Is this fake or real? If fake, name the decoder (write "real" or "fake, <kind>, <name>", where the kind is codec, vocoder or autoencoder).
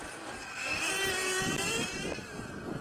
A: real